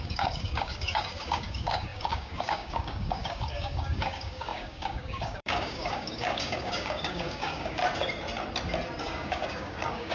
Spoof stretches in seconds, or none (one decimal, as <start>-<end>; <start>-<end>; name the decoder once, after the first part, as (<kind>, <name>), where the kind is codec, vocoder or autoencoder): 0.0-7.8 (codec, DAC); 9.0-10.1